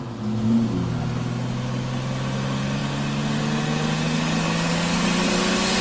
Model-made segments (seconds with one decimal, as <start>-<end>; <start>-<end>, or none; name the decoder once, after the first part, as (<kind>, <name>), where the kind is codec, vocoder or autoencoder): none